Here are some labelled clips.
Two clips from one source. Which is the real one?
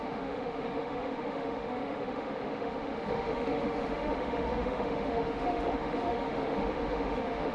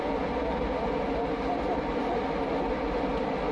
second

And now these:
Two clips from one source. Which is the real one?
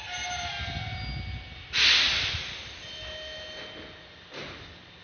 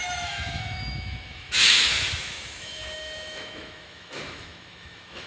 first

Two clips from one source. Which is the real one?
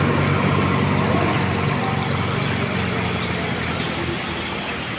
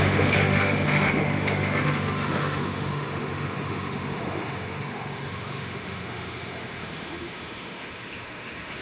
first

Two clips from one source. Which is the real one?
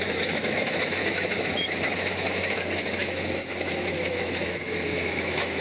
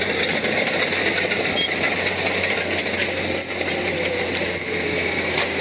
second